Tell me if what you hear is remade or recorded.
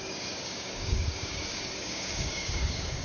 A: remade